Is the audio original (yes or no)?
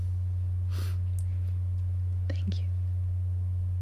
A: yes